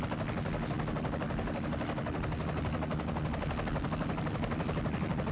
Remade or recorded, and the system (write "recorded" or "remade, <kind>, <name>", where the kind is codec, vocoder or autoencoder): recorded